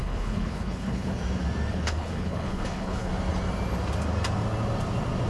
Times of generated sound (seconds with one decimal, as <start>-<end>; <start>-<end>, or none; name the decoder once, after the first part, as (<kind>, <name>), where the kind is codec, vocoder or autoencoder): 0.0-1.2 (codec, HILCodec); 1.7-3.1